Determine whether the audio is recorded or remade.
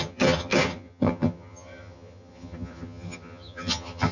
remade